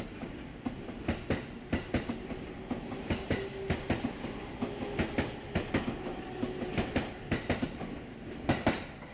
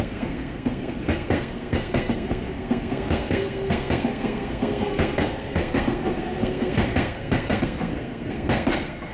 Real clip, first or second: first